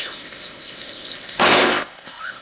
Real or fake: fake